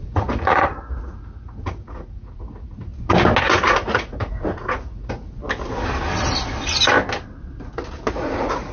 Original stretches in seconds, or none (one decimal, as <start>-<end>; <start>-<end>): 2.9-3.4; 5.4-8.1